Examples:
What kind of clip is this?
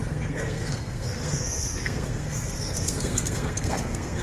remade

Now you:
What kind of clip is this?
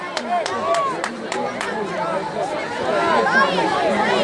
recorded